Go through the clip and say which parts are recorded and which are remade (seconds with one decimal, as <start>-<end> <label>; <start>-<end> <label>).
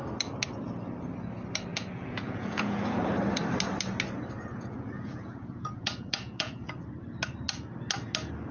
0.0-1.7 recorded; 1.7-3.0 remade; 3.0-4.5 recorded; 4.5-6.8 remade; 6.8-8.5 recorded